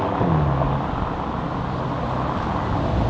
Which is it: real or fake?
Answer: real